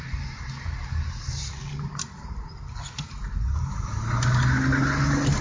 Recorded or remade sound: recorded